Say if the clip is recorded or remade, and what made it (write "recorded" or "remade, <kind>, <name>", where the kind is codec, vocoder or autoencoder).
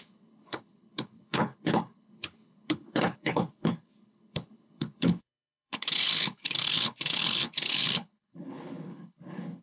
remade, codec, HILCodec